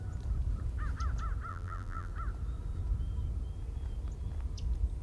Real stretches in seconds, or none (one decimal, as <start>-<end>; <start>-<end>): 0.0-1.5; 2.1-5.0